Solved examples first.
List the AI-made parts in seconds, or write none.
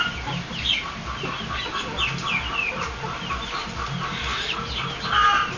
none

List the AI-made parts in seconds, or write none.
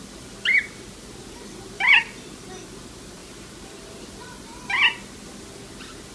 3.2-4.0 (vocoder, BigVGAN v2)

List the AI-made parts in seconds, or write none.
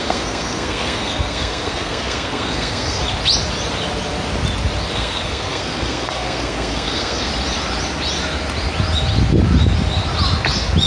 0.0-3.0 (codec, SNAC); 4.9-7.3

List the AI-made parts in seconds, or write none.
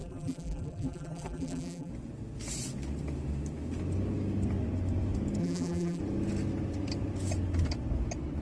0.0-1.9 (vocoder, BigVGAN v2); 5.4-6.0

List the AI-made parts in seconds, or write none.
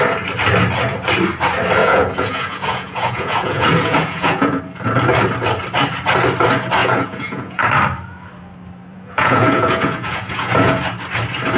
1.8-4.6 (vocoder, Vocos); 6.8-7.6; 8.9-10.8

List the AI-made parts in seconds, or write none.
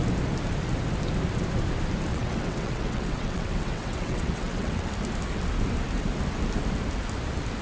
2.1-4.9 (vocoder, WaveNeXt)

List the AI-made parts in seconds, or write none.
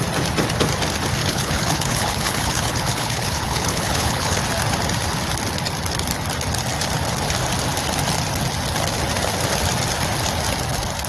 1.2-4.4 (codec, HILCodec)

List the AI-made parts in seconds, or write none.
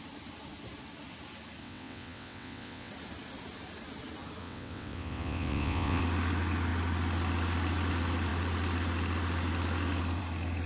1.6-2.9 (vocoder, WaveNeXt); 4.4-6.0